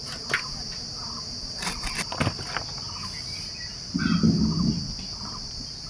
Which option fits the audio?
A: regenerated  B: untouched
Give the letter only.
B